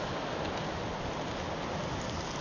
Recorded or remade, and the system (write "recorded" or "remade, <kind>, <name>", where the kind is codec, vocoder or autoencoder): recorded